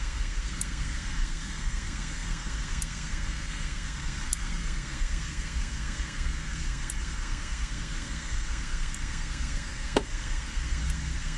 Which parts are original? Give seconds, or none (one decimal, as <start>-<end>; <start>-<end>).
none